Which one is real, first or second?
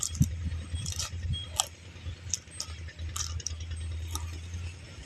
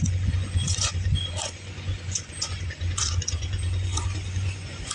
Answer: first